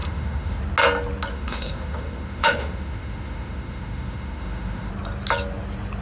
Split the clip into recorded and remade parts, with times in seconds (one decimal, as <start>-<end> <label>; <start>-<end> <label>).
0.0-0.6 remade; 0.6-1.3 recorded; 1.3-4.9 remade; 4.9-6.0 recorded